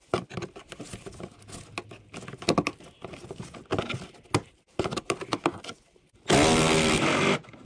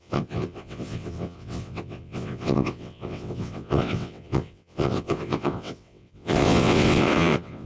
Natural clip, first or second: first